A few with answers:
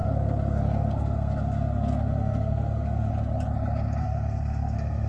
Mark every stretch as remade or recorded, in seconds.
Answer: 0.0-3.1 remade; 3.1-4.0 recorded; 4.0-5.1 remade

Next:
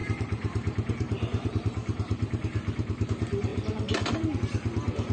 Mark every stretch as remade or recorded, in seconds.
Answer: 0.0-3.1 remade; 3.1-5.1 recorded

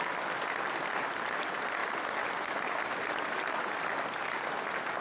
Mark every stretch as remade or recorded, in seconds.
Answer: 0.0-5.0 recorded

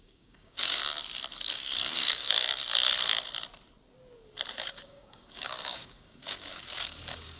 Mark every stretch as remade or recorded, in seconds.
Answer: 0.0-0.8 remade; 0.8-1.5 recorded; 1.5-2.5 remade; 2.5-4.5 recorded; 4.5-7.4 remade

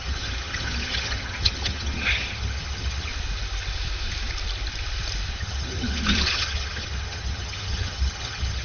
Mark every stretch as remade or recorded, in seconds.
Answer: 0.0-3.1 remade; 3.1-5.4 recorded; 5.4-8.6 remade

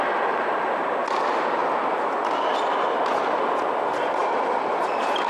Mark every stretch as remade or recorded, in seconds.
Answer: 0.0-4.2 recorded; 4.2-5.3 remade